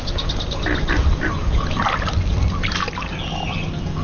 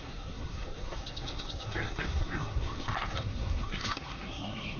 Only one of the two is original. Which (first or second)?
first